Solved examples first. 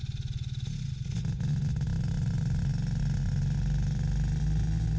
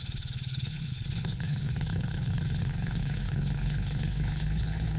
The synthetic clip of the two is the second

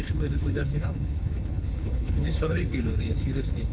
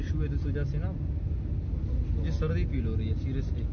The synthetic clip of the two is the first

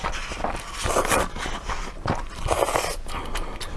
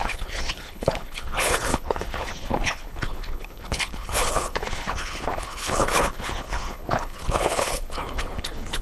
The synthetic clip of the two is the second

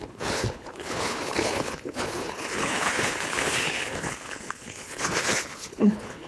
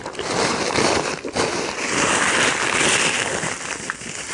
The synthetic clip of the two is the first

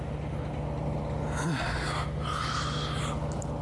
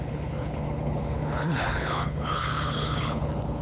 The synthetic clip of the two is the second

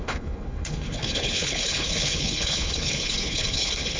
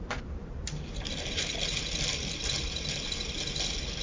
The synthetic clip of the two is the first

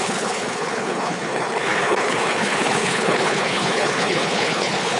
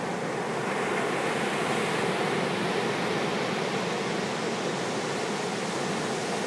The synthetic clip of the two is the first